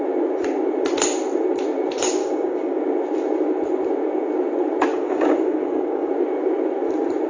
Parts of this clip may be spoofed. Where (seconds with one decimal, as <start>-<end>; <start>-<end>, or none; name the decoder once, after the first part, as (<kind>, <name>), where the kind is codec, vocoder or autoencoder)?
2.2-2.8 (codec, DAC); 4.9-6.1

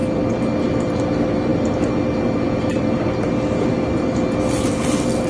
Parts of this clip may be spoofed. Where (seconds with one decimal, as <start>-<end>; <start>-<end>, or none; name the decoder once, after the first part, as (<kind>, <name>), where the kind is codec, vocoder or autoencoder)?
none

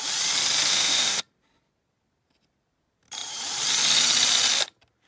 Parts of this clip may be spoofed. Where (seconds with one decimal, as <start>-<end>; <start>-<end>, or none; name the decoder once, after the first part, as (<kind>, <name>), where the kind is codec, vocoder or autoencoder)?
0.7-1.2 (autoencoder, DAC-VAE)

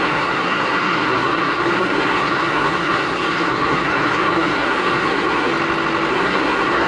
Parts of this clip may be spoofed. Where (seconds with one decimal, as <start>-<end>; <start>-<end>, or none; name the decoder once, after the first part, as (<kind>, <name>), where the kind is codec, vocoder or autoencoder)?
0.0-5.5 (codec, SNAC); 6.1-6.9

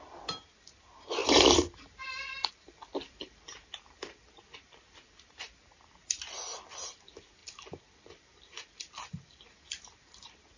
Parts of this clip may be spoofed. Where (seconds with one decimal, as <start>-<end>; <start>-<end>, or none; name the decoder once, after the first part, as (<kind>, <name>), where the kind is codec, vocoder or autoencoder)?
0.0-10.6 (vocoder, BigVGAN v2)